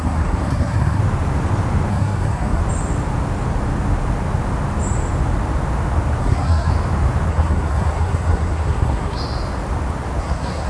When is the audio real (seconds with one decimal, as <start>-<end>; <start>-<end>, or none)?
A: 1.0-1.9; 2.6-6.2; 6.7-7.3; 9.2-10.2